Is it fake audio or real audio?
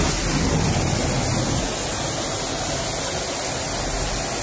real